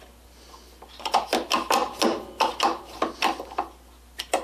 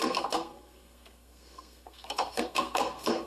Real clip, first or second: first